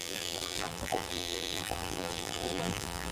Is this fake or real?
fake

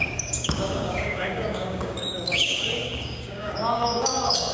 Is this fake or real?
fake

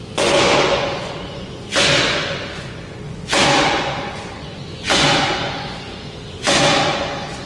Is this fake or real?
fake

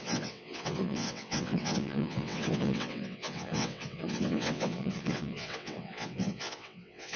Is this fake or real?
fake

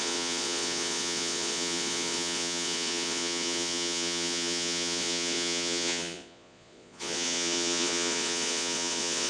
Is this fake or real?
fake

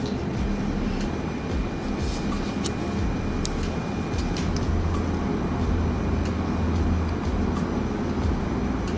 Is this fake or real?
real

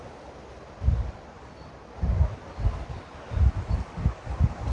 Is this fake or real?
real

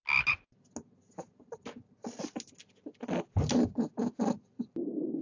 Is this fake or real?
real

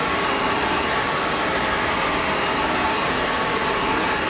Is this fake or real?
real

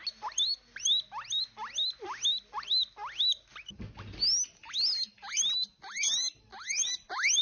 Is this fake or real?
real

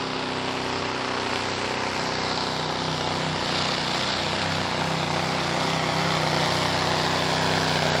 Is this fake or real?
real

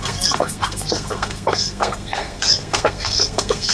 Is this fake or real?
fake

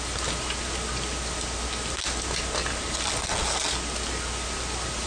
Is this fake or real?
real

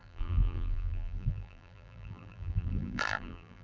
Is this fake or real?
fake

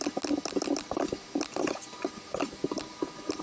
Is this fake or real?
real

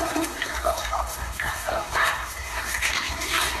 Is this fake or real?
fake